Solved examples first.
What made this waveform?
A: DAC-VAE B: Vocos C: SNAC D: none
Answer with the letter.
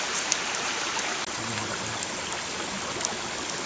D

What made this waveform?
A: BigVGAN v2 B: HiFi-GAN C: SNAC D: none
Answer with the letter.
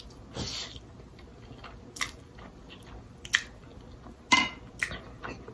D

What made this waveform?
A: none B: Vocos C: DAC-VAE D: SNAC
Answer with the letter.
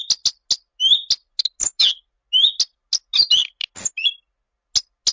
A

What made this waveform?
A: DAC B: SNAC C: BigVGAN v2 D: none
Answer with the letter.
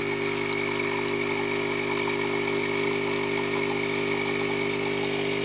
D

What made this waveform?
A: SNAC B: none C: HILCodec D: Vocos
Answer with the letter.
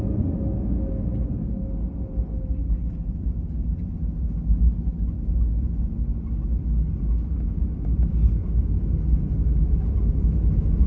B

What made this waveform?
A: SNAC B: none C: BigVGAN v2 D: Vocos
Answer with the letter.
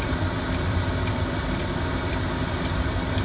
C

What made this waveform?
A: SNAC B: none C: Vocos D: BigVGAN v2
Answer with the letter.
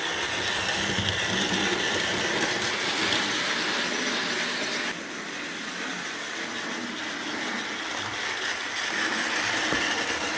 B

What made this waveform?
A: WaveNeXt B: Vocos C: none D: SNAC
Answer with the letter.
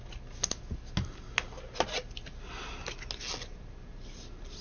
C